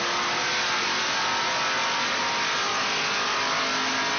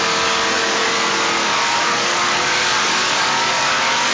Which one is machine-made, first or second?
second